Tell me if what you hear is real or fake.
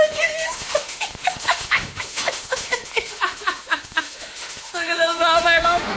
fake